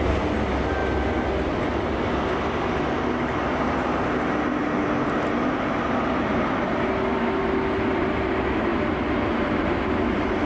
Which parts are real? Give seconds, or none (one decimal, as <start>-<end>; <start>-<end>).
0.0-10.5